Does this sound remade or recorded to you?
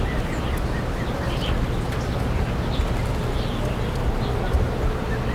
recorded